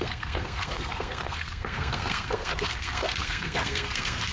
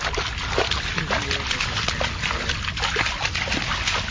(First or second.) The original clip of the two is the second